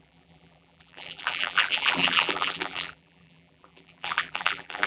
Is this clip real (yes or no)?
no